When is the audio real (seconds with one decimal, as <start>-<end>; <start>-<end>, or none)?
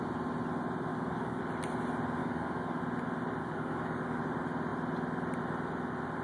0.0-0.9; 1.4-2.2; 2.8-3.4; 4.2-6.2